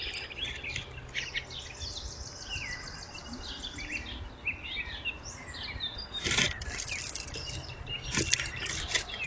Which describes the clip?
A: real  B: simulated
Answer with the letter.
A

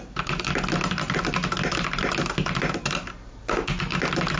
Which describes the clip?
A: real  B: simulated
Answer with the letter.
A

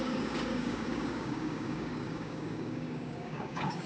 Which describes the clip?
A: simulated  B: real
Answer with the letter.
A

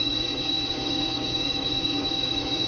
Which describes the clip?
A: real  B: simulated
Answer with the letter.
B